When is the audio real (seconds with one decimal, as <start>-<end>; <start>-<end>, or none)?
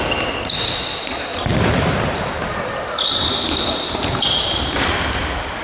0.0-1.3; 4.7-5.6